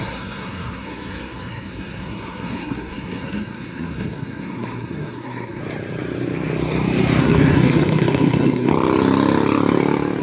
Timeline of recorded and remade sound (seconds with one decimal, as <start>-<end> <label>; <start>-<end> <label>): 0.0-5.6 remade; 5.6-7.2 recorded; 7.2-8.7 remade; 8.7-10.2 recorded